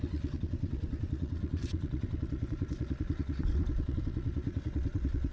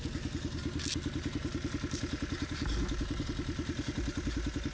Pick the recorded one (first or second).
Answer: second